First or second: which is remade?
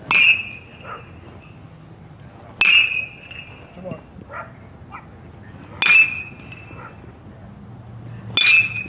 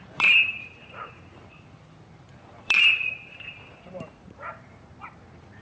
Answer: second